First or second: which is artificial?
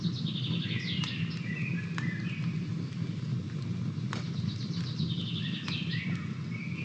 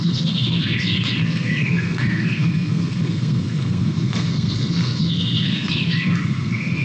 second